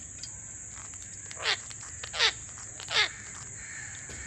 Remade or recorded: remade